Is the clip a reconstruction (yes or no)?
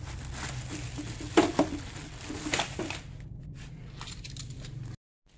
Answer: no